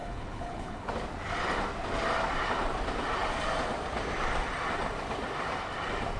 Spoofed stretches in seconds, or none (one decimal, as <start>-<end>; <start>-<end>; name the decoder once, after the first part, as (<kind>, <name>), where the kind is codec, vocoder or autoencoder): 0.0-0.9 (codec, HILCodec)